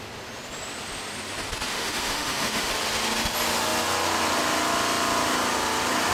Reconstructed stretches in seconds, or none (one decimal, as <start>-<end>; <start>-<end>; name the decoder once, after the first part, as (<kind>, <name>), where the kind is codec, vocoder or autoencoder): 1.7-2.7 (autoencoder, DAC-VAE)